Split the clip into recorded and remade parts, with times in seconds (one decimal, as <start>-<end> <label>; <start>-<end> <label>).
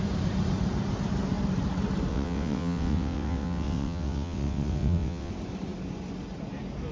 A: 0.0-2.1 recorded; 2.1-5.3 remade; 5.3-6.9 recorded